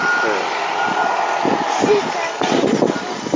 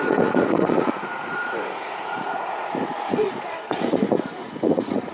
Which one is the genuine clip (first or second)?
first